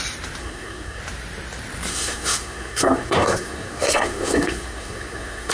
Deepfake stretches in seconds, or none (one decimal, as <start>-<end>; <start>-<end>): 0.4-1.0; 1.9-5.5